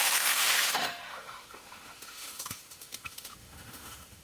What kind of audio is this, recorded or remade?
remade